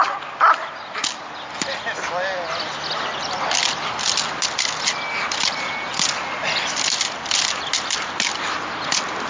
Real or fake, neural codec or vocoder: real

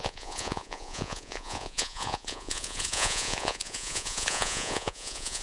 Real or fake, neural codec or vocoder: fake, vocoder, Vocos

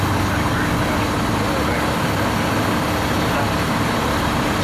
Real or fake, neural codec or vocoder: real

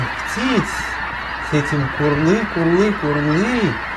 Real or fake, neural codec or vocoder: real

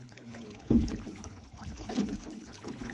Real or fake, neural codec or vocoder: fake, codec, HILCodec